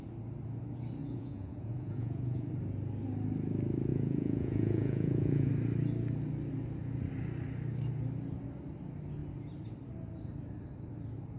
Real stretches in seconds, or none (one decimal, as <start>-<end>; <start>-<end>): 0.0-1.0; 2.5-3.9; 5.5-11.4